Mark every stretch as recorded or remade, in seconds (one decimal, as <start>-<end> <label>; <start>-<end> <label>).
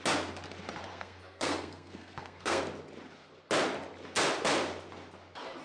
0.0-0.9 recorded; 0.9-2.6 remade; 2.6-5.6 recorded